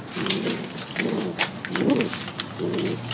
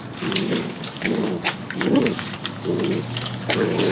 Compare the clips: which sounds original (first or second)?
first